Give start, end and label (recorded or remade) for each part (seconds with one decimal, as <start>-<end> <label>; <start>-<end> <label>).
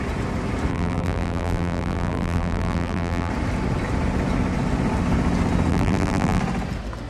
0.0-0.7 recorded; 0.7-3.3 remade; 3.3-5.7 recorded; 5.7-6.4 remade; 6.4-7.1 recorded